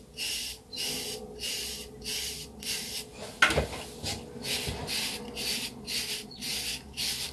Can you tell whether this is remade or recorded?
recorded